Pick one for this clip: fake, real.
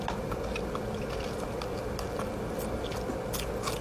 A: real